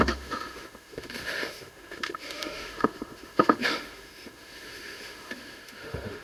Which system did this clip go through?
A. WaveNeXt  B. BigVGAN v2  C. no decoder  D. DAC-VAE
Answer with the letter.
D